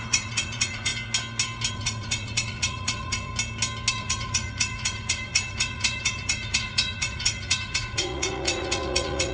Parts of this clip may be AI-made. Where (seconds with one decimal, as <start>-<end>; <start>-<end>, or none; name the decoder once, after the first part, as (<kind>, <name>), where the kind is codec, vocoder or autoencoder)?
0.0-0.9 (vocoder, Vocos); 1.7-3.3; 3.9-9.3